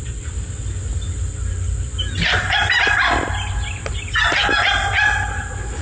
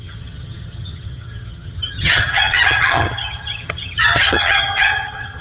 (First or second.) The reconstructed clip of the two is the second